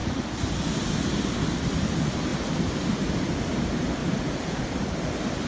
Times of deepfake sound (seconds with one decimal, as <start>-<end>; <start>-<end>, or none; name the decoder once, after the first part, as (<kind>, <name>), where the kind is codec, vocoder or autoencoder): none